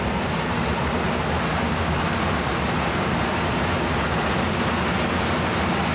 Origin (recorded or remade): recorded